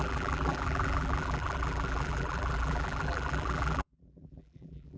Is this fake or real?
fake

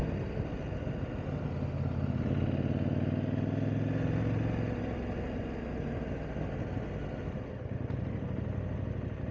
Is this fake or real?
real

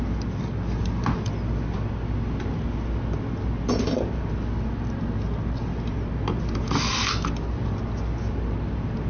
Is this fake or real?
real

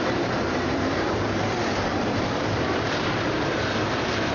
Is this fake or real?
fake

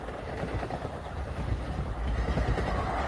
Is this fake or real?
real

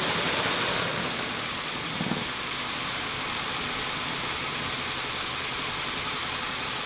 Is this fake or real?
real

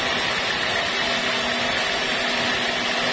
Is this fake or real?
real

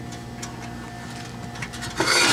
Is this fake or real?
real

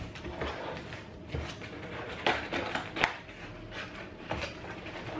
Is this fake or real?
real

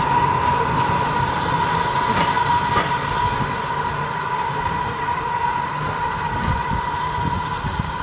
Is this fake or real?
real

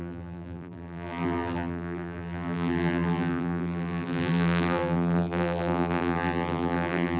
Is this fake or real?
fake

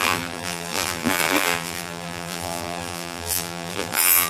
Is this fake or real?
fake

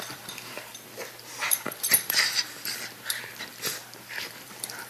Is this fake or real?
fake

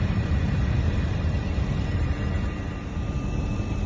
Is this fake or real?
fake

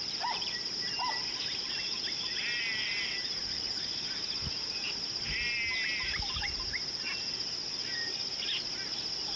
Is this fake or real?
fake